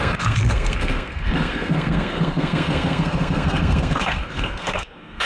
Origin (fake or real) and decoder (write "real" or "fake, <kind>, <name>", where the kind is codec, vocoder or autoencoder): fake, codec, SNAC